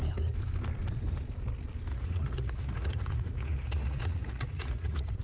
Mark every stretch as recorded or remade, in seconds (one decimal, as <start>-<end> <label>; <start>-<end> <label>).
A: 0.0-1.9 recorded; 1.9-5.2 remade